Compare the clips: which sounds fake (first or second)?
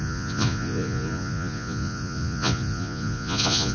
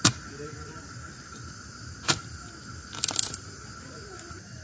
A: first